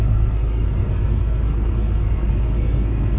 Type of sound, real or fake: fake